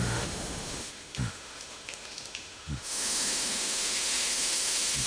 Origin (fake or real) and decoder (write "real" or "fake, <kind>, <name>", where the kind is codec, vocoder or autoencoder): fake, autoencoder, DAC-VAE